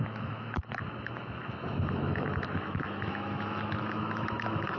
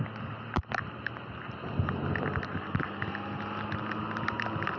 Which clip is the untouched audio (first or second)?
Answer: second